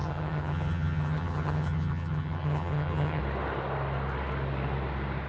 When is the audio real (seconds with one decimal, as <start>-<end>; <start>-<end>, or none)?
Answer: 3.2-5.3